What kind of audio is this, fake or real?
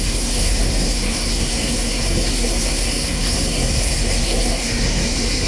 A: fake